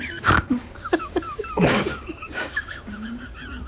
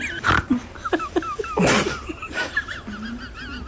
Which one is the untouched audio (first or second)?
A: second